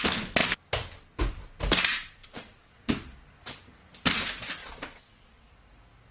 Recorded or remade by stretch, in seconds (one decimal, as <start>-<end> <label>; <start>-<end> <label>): 0.0-2.2 recorded; 2.2-2.9 remade; 2.9-4.6 recorded; 4.6-5.5 remade; 5.5-6.1 recorded

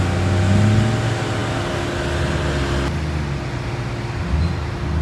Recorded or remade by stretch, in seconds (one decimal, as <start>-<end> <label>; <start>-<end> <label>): 0.0-5.0 recorded

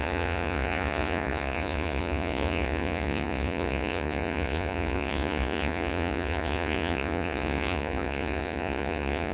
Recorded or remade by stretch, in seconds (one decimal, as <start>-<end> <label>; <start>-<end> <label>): 0.0-9.3 remade

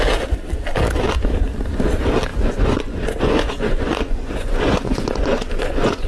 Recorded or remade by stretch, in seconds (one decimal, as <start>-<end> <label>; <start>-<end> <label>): 0.0-2.3 recorded; 2.3-6.1 remade

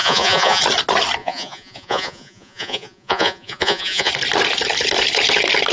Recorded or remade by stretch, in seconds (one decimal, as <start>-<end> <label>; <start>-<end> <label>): 0.0-0.6 remade; 0.6-1.2 recorded; 1.2-4.1 remade; 4.1-5.7 recorded

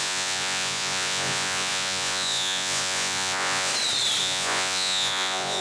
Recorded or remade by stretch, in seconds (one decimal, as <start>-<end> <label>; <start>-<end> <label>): 0.0-3.7 remade; 3.7-4.2 recorded; 4.2-5.6 remade

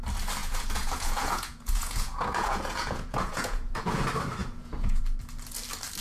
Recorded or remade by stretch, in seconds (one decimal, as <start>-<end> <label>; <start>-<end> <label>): 0.0-0.4 recorded; 0.4-4.0 remade; 4.0-4.4 recorded; 4.4-5.0 remade; 5.0-6.0 recorded